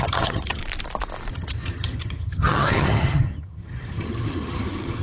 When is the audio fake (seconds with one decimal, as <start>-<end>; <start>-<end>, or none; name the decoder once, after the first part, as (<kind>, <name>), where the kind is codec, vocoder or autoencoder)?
0.0-0.6 (vocoder, HiFi-GAN); 1.3-5.0